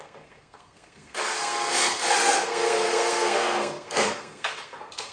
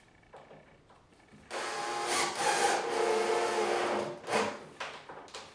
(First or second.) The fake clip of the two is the first